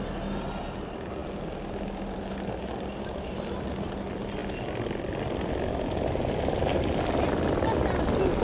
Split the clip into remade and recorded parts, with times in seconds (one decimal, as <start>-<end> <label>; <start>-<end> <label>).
0.0-8.4 recorded